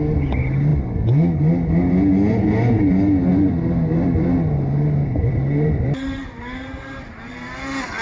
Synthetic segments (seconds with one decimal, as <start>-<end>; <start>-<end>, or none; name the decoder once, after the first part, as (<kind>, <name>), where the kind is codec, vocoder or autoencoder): 3.3-7.5 (vocoder, BigVGAN v2)